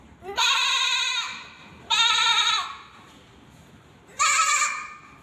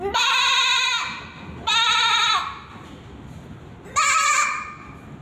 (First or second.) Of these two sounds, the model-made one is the first